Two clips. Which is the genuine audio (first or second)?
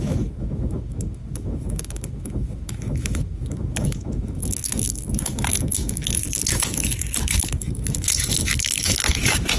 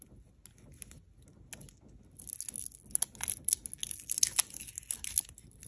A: second